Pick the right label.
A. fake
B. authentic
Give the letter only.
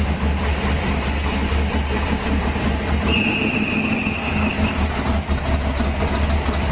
B